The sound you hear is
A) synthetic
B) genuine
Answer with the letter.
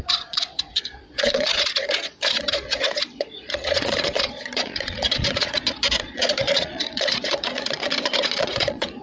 A